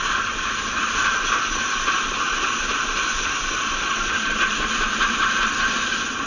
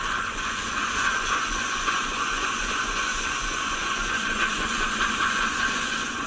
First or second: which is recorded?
first